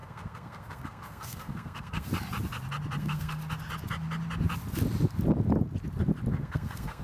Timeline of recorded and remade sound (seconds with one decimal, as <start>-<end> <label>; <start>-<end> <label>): 0.0-2.1 remade; 2.1-3.0 recorded; 3.0-3.4 remade; 3.4-6.3 recorded; 6.3-7.0 remade